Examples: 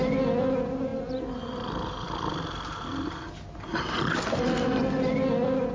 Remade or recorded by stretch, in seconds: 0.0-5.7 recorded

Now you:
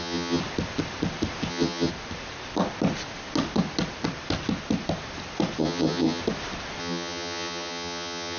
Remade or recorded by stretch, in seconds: 0.0-0.4 remade; 0.4-1.5 recorded; 1.5-1.9 remade; 1.9-5.6 recorded; 5.6-6.2 remade; 6.2-6.8 recorded; 6.8-8.4 remade

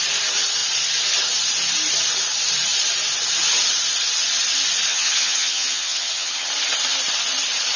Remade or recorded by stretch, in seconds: 0.0-4.9 recorded; 4.9-6.5 remade; 6.5-7.8 recorded

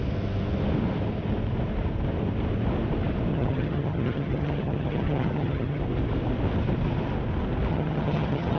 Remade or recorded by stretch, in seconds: 0.0-3.3 recorded; 3.3-5.8 remade; 5.8-7.7 recorded; 7.7-8.6 remade

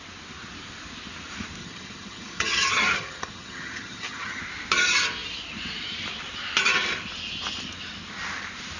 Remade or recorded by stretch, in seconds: 0.0-1.6 recorded; 1.6-4.4 remade; 4.4-8.8 recorded

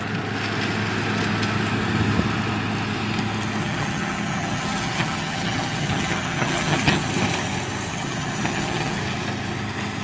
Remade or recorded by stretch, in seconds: 0.0-3.6 recorded; 3.6-7.1 remade; 7.1-7.9 recorded; 7.9-9.0 remade; 9.0-10.0 recorded